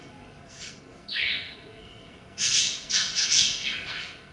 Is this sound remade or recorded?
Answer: remade